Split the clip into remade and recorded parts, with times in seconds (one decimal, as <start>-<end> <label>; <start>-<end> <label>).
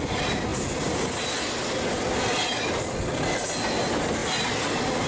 0.0-5.1 recorded